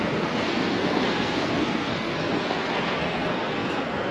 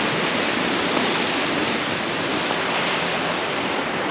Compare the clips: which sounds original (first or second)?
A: second